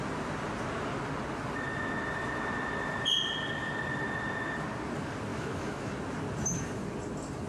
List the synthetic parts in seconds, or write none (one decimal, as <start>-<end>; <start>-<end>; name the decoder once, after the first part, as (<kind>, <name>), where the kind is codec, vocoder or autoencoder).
5.3-5.9 (autoencoder, DAC-VAE)